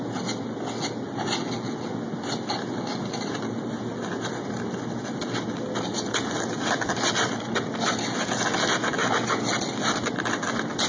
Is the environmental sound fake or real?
real